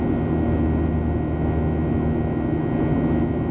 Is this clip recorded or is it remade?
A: recorded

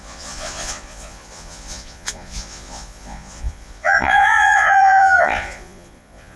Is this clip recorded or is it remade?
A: remade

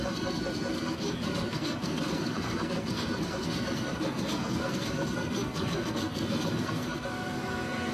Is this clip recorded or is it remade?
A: remade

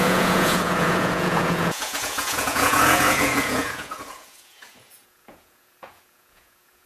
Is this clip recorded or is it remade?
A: remade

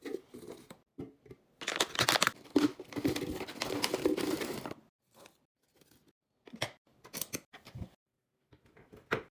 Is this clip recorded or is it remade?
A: recorded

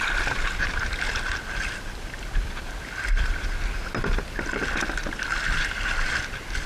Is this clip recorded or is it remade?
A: recorded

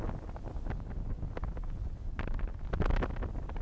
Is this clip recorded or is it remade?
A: recorded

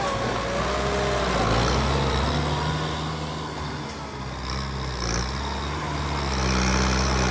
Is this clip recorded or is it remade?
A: recorded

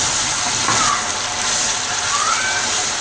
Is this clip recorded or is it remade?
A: recorded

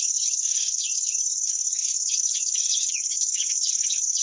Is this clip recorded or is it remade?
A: remade